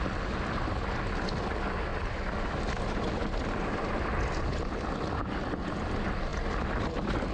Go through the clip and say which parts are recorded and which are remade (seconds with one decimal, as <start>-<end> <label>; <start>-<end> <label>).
0.0-1.9 recorded; 1.9-5.3 remade; 5.3-7.3 recorded